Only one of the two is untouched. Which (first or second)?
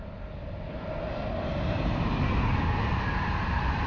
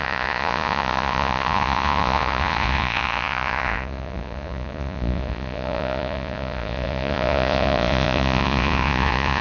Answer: first